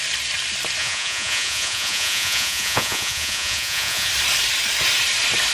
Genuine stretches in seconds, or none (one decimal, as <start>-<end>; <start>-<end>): 0.0-0.8; 4.1-5.5